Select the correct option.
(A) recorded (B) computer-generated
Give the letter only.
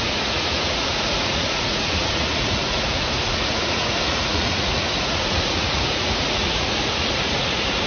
B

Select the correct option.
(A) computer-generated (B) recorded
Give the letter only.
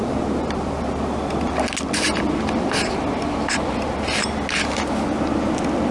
B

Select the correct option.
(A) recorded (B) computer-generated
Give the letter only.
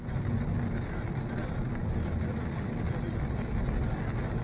A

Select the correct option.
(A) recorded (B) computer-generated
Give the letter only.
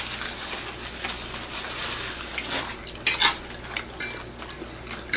A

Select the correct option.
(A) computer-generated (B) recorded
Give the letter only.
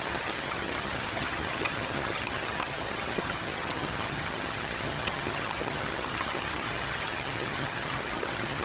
A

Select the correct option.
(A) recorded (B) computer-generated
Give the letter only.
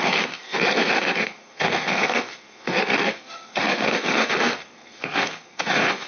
B